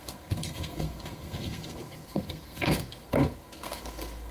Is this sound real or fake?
fake